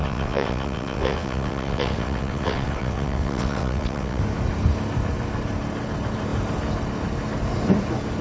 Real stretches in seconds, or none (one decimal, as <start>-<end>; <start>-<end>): 4.2-8.2